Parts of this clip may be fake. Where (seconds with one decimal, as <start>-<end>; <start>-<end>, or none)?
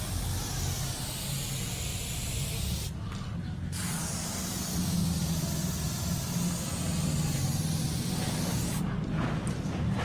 1.9-2.6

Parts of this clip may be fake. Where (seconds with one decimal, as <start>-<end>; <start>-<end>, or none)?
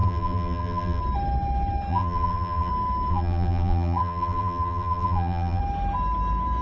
0.0-1.0; 1.9-2.7; 3.1-5.6